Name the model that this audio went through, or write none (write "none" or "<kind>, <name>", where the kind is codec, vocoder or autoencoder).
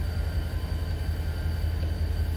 none